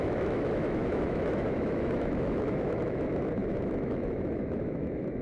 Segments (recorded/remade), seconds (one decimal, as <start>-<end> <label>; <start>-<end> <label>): 0.0-5.2 remade